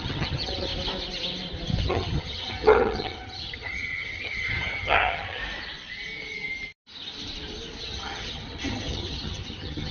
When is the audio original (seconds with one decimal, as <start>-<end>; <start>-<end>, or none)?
0.7-1.8; 5.4-7.8